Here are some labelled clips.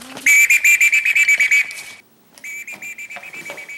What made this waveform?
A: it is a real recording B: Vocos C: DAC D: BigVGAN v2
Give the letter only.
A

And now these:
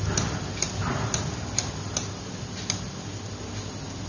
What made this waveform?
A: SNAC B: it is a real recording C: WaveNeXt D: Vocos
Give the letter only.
B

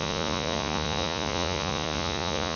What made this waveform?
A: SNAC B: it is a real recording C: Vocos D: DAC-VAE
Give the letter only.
C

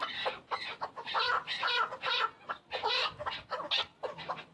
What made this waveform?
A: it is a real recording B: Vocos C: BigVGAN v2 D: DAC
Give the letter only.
A